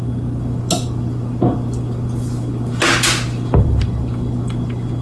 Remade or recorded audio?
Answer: recorded